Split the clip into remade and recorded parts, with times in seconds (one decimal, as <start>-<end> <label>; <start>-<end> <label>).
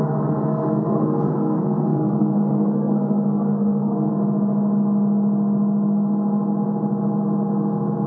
0.0-4.1 remade; 4.1-8.1 recorded